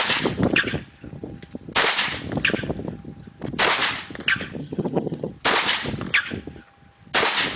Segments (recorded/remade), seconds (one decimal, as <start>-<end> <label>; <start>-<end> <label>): 0.0-4.6 recorded; 4.6-5.3 remade; 5.3-7.6 recorded